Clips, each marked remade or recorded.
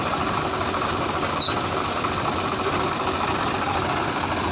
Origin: recorded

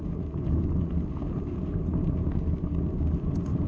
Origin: recorded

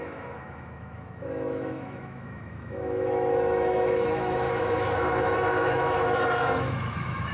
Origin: remade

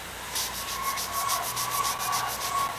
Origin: recorded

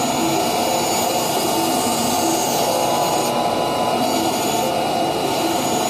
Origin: recorded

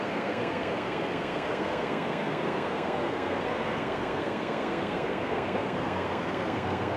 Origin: remade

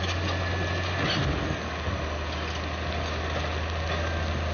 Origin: recorded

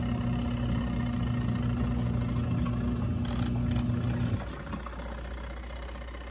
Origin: recorded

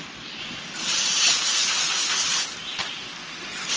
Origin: recorded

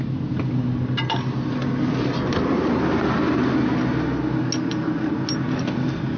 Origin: recorded